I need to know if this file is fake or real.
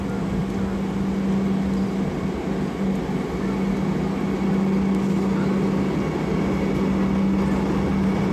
real